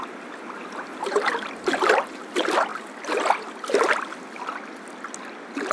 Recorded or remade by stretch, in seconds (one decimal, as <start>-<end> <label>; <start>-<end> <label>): 0.0-0.9 recorded; 0.9-1.5 remade; 1.5-5.7 recorded